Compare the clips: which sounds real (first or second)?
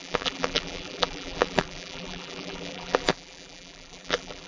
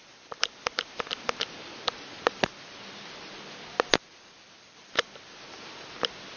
second